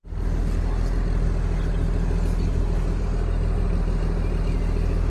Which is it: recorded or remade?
recorded